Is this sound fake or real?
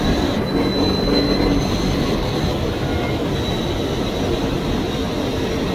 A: real